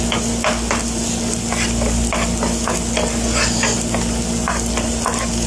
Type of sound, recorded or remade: recorded